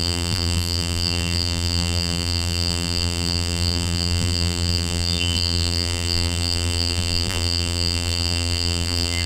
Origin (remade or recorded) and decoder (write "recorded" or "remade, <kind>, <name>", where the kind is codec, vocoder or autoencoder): remade, vocoder, BigVGAN v2